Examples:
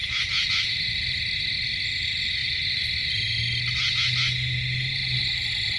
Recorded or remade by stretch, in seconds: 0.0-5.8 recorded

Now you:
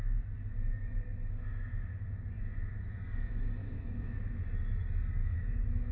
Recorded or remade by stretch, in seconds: 0.0-3.6 recorded; 3.6-4.4 remade; 4.4-5.2 recorded; 5.2-5.9 remade

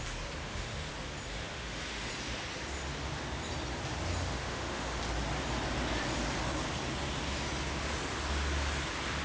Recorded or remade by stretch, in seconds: 0.0-0.4 recorded; 0.4-0.9 remade; 0.9-1.3 recorded; 1.3-2.1 remade; 2.1-4.2 recorded; 4.2-5.0 remade; 5.0-9.2 recorded